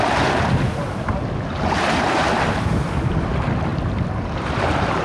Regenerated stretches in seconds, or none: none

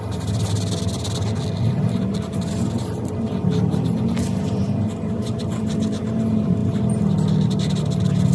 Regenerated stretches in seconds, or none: none

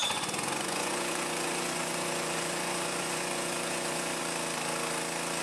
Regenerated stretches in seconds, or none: 0.0-4.2 (vocoder, Vocos)

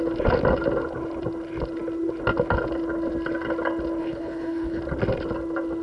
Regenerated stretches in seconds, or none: 4.0-4.8 (codec, HILCodec)